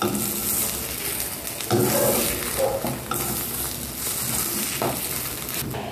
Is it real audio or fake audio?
real